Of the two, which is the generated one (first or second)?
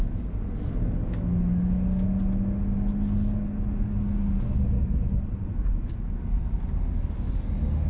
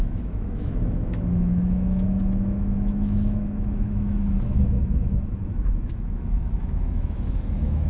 second